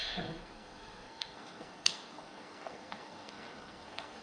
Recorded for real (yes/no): no